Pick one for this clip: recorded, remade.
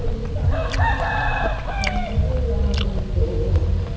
recorded